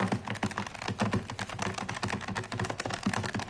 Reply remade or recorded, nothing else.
recorded